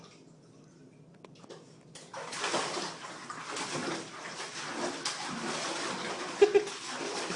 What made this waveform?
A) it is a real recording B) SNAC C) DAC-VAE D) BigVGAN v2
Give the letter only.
A